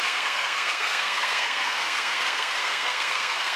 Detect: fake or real fake